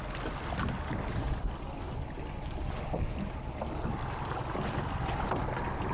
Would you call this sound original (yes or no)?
yes